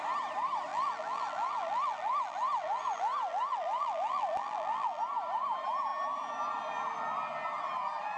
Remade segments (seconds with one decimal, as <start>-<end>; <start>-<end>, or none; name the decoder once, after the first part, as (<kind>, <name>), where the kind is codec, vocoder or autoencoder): 0.7-5.0 (vocoder, BigVGAN v2)